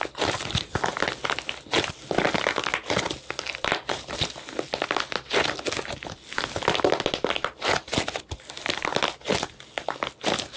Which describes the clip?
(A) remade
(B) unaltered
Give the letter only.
B